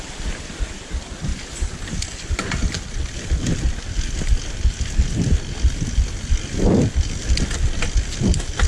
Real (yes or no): yes